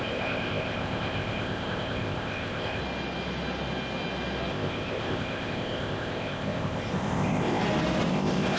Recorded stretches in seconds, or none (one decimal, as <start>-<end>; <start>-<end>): 2.8-4.5; 7.6-8.1